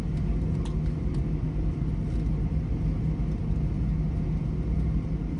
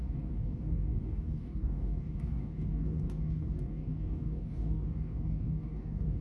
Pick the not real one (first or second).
second